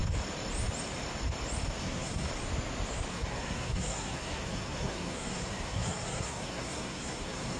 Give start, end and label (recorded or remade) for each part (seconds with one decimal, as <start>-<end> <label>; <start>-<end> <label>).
0.0-1.8 recorded; 1.8-2.3 remade; 2.3-3.1 recorded; 3.1-7.6 remade